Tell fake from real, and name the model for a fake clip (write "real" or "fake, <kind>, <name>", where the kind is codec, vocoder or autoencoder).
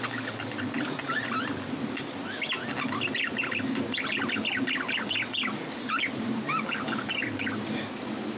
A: real